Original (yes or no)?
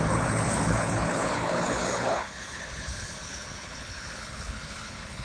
no